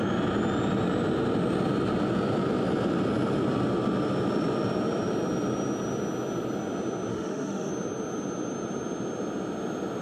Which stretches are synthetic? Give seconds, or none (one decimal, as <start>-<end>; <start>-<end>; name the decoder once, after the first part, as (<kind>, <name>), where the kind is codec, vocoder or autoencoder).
7.1-7.7 (autoencoder, DAC-VAE)